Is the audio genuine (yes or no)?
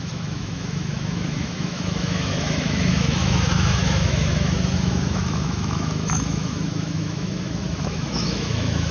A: no